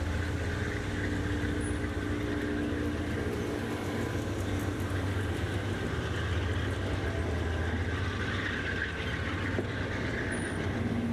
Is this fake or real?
real